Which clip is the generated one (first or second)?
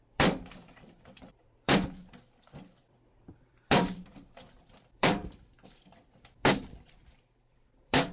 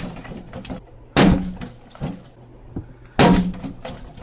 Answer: first